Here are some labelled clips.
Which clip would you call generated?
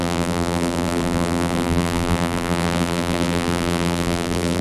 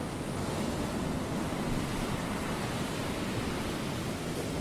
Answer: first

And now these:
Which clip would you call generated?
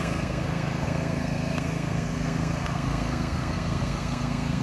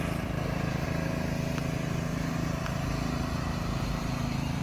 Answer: first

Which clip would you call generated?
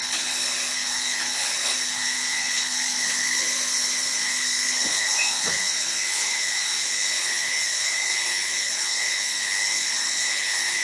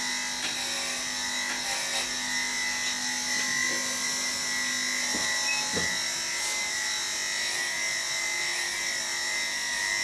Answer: first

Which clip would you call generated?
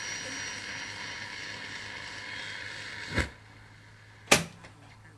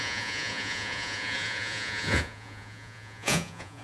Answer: second